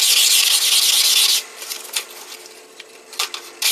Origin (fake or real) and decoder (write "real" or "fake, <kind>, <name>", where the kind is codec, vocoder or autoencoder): real